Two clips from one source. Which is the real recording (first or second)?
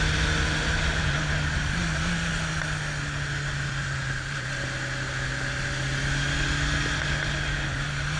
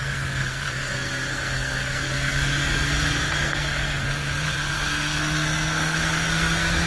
first